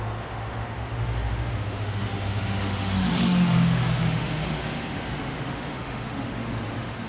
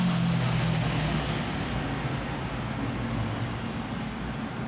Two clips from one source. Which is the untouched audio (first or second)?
second